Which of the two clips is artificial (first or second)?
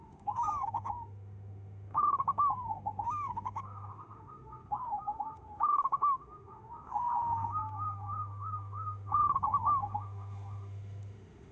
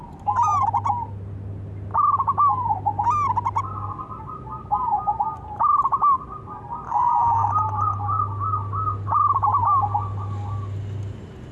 first